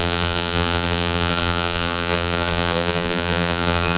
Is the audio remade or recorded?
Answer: remade